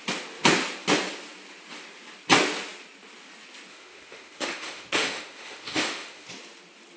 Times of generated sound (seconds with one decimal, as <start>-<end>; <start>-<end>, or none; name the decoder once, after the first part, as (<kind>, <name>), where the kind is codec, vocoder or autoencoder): 3.7-6.3 (autoencoder, DAC-VAE)